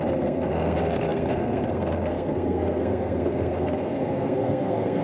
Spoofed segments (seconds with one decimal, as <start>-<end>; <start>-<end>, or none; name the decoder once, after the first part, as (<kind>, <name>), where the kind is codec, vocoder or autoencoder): 0.0-5.0 (codec, SNAC)